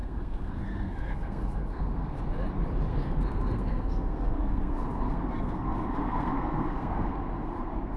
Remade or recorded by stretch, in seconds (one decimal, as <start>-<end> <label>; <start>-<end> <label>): 0.0-2.2 remade; 2.2-2.9 recorded; 2.9-8.0 remade